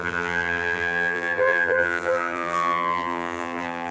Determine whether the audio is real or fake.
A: fake